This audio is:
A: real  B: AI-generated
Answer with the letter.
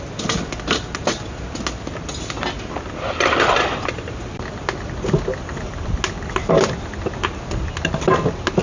A